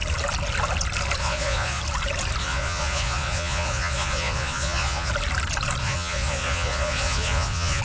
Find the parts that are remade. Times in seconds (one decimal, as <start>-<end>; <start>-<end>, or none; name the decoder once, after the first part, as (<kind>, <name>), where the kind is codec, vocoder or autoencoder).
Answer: 1.2-1.8 (vocoder, Vocos); 2.4-5.1; 5.8-7.8